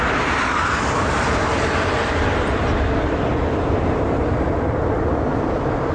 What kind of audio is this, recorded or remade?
recorded